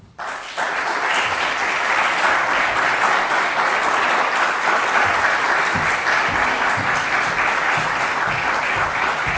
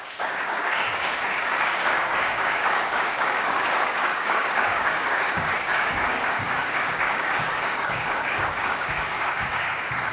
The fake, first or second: second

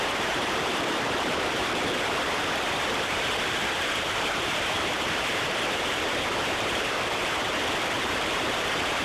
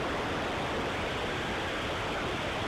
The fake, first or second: first